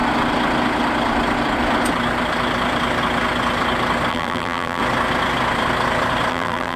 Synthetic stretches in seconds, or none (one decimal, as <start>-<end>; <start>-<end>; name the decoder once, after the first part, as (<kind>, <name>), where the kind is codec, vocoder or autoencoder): 4.1-4.8 (vocoder, BigVGAN v2); 6.3-6.8